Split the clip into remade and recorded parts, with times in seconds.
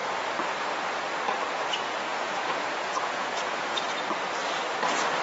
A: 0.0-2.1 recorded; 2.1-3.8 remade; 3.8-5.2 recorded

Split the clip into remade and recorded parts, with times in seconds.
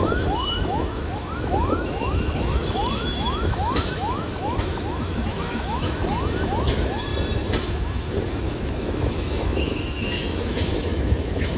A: 0.0-6.0 remade; 6.0-6.6 recorded; 6.6-7.1 remade; 7.1-8.5 recorded; 8.5-11.6 remade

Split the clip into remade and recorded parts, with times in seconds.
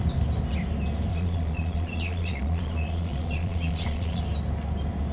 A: 0.0-1.1 recorded; 1.1-4.2 remade; 4.2-5.1 recorded